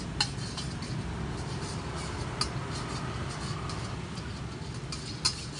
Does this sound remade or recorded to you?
recorded